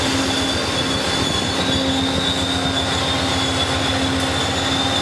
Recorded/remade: recorded